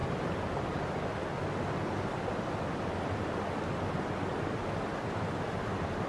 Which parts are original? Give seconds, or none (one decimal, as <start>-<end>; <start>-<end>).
0.8-6.1